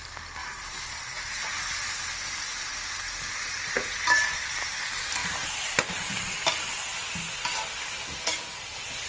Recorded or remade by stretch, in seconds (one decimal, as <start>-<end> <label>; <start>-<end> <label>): 0.0-0.4 recorded; 0.4-1.6 remade; 1.6-3.8 recorded; 3.8-4.4 remade; 4.4-5.2 recorded; 5.2-6.2 remade; 6.2-9.1 recorded